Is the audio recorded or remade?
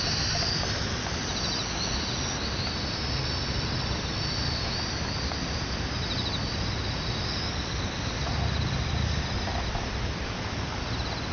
recorded